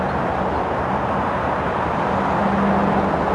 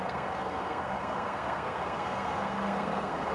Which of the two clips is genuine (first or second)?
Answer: first